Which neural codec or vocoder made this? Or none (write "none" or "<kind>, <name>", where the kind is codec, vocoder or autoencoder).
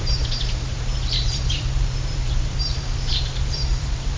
vocoder, BigVGAN v2